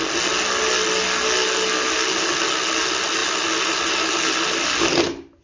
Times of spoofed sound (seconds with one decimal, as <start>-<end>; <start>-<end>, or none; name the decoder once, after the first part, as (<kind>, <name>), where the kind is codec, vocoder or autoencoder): none